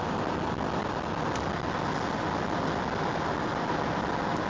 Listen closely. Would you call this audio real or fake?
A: real